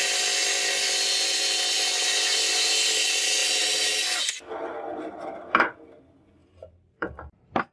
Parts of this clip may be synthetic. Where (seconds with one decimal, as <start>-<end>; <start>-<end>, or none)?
6.4-7.7